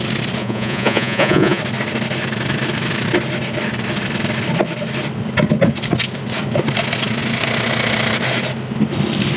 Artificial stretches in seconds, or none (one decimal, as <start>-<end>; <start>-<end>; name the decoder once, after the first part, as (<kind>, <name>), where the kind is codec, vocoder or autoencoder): 0.4-1.6 (vocoder, Vocos)